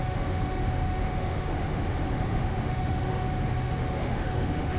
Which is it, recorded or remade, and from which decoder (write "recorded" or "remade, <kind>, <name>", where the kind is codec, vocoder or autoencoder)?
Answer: remade, autoencoder, DAC-VAE